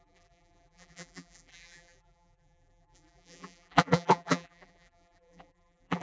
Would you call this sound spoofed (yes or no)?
yes